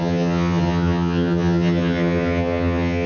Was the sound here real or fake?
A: fake